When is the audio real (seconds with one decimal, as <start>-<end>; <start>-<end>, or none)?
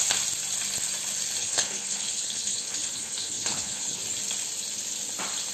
0.0-1.4; 4.0-5.5